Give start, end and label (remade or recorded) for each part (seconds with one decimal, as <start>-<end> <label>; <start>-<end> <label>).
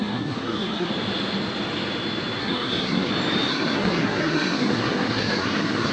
0.0-0.9 remade; 0.9-2.4 recorded; 2.4-3.1 remade; 3.1-3.5 recorded; 3.5-5.9 remade